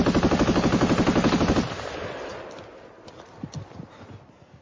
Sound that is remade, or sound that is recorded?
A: recorded